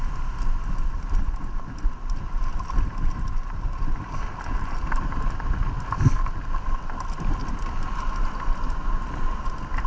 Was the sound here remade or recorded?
recorded